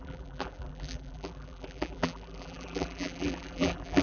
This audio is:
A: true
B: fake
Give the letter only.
B